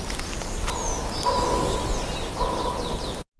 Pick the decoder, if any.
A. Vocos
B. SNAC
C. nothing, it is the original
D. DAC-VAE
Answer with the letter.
C